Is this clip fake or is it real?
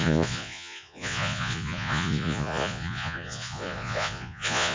fake